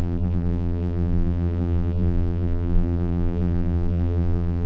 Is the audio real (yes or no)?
no